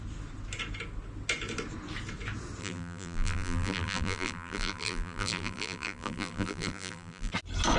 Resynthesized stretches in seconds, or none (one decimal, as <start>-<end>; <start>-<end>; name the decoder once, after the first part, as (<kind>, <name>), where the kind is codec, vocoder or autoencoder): 2.6-7.3 (vocoder, BigVGAN v2)